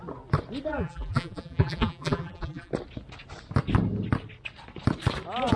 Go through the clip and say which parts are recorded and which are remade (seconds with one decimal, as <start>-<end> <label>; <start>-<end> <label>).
0.0-0.7 recorded; 0.7-2.7 remade; 2.7-5.6 recorded